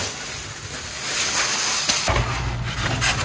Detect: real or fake real